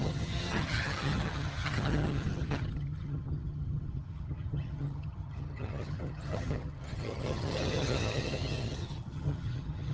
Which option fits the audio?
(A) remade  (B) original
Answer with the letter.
A